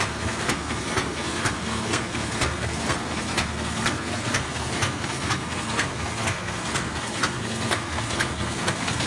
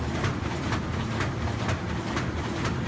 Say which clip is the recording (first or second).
second